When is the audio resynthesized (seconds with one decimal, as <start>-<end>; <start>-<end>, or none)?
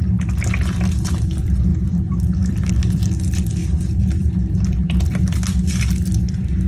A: 1.7-2.7; 3.6-5.7